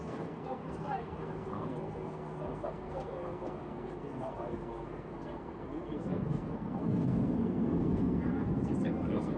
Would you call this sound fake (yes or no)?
yes